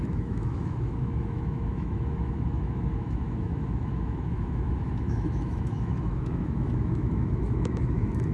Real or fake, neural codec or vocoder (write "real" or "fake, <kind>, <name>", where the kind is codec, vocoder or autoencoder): fake, autoencoder, DAC-VAE